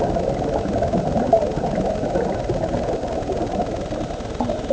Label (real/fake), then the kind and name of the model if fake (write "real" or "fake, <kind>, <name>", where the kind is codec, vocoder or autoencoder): real